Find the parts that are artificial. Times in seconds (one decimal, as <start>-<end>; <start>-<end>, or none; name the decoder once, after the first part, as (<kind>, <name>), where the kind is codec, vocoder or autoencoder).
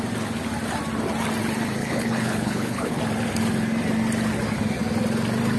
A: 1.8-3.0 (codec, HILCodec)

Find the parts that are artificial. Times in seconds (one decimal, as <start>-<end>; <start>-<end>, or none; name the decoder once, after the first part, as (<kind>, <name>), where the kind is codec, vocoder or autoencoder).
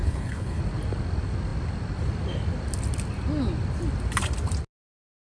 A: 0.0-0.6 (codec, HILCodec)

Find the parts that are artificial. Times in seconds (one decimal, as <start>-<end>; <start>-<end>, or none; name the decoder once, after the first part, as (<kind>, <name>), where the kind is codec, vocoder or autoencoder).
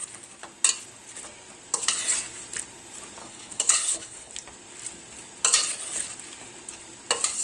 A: 3.2-4.3 (codec, HILCodec)